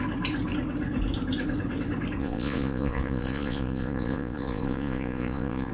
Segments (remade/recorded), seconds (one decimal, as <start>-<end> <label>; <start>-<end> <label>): 0.0-2.2 recorded; 2.2-5.7 remade